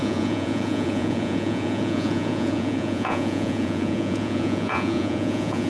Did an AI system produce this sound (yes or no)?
yes